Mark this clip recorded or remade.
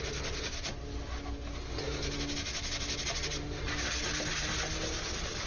recorded